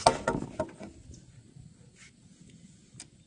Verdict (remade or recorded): recorded